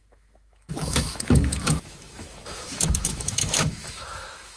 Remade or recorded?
remade